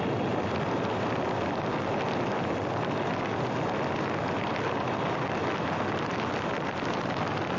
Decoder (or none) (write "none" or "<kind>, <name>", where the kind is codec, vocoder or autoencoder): none